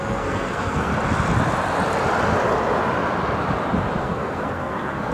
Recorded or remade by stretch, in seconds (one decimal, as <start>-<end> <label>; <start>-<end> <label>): 0.0-0.9 remade; 0.9-4.0 recorded; 4.0-5.1 remade